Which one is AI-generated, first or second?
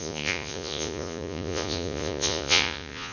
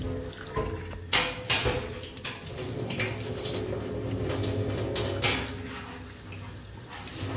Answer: first